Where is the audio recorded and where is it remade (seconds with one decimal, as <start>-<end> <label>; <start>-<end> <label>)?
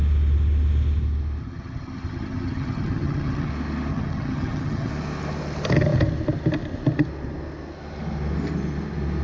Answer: 0.0-1.4 recorded; 1.4-3.5 remade; 3.5-3.9 recorded; 3.9-4.9 remade; 4.9-9.2 recorded